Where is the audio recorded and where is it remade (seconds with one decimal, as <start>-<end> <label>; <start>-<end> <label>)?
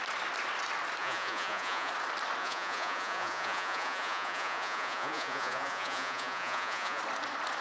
0.0-1.0 recorded; 1.0-1.9 remade; 1.9-2.4 recorded; 2.4-7.0 remade; 7.0-7.6 recorded